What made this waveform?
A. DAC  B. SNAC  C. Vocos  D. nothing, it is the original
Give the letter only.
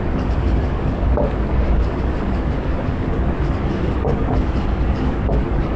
A